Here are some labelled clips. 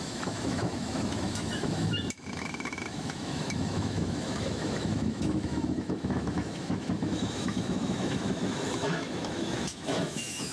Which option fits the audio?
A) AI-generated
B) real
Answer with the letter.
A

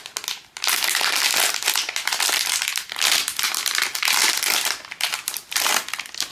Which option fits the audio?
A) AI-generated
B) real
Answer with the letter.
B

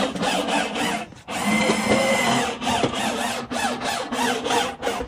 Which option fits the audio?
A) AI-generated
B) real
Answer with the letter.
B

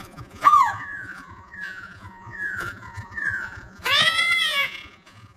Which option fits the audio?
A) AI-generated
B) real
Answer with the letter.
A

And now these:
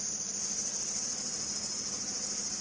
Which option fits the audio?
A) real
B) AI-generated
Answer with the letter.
A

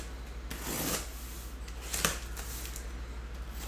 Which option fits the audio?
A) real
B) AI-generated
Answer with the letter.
A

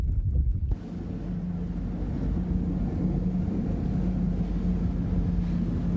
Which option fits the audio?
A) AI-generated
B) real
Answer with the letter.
B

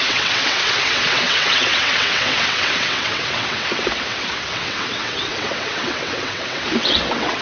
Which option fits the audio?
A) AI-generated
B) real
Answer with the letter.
A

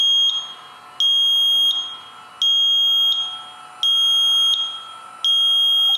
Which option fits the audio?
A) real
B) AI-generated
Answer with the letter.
A